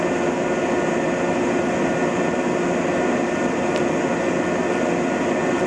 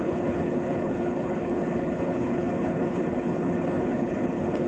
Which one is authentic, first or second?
first